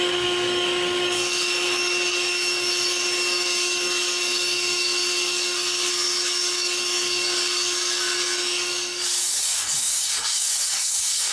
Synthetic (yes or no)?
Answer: yes